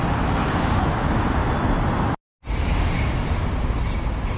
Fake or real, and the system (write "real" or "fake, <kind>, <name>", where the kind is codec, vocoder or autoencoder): real